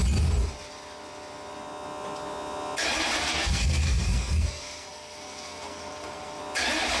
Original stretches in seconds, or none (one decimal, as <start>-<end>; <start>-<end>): 0.0-3.2; 6.4-7.0